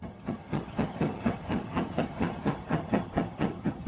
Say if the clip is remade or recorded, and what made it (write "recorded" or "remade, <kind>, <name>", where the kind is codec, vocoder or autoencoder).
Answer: remade, vocoder, HiFi-GAN